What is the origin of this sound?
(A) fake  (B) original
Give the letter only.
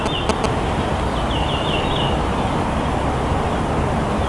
B